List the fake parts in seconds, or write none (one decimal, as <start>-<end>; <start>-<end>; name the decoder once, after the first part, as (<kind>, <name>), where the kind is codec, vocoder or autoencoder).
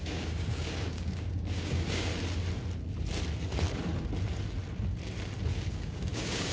0.0-2.1 (codec, DAC); 5.7-6.5